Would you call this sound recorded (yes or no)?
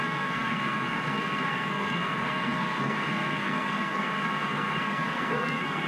no